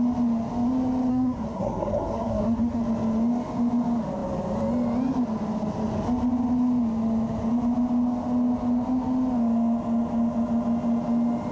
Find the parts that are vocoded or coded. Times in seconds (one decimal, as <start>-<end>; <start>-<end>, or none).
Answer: 1.1-2.8